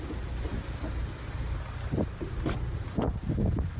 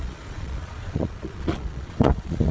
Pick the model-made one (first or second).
second